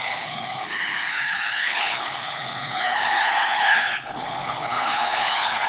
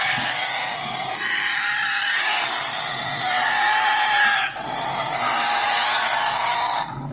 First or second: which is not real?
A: first